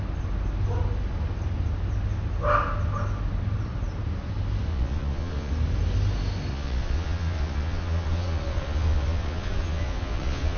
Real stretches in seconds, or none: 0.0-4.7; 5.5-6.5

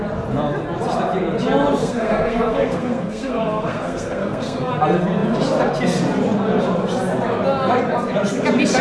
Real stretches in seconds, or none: 0.0-1.8; 4.7-8.8

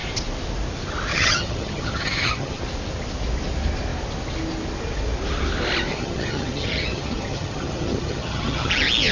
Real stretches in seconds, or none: 0.0-1.1; 2.6-5.9; 8.7-9.1

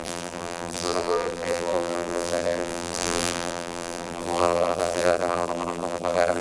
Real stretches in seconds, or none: none

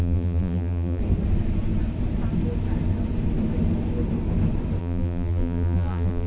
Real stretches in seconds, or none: 1.0-4.8

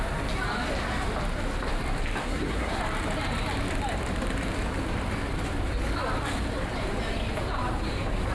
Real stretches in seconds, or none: 0.0-2.2; 2.8-8.3